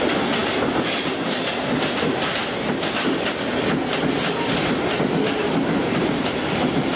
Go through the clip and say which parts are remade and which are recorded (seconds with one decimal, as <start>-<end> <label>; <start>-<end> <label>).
0.0-5.8 recorded; 5.8-6.4 remade; 6.4-7.0 recorded